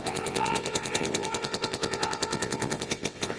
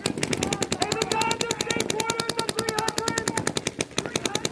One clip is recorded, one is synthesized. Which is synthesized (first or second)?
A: first